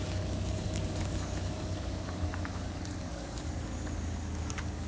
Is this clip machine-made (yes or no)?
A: yes